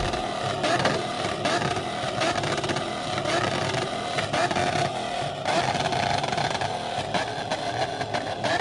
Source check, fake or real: real